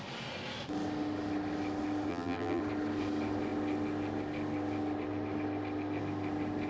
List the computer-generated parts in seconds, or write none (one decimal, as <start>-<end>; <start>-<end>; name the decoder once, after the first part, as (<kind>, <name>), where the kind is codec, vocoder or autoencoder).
2.1-2.6 (vocoder, BigVGAN v2)